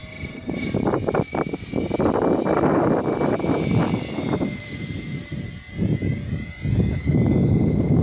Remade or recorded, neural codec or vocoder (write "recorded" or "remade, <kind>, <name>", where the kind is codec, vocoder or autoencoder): remade, vocoder, BigVGAN v2